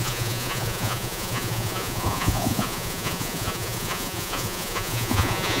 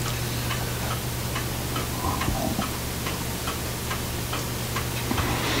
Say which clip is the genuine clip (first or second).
second